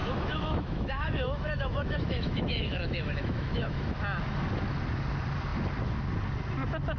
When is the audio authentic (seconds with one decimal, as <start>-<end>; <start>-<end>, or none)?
3.9-7.0